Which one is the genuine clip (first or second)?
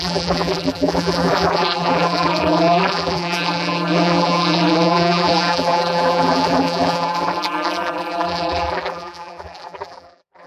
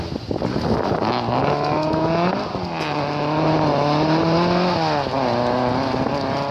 second